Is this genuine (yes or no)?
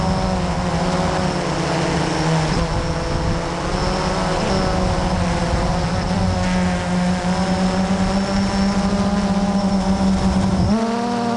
yes